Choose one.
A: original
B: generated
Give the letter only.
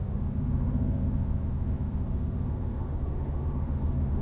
B